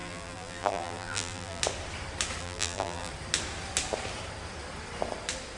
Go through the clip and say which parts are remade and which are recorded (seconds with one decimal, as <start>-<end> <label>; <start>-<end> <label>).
0.0-1.6 remade; 1.6-2.4 recorded; 2.4-3.1 remade; 3.1-5.6 recorded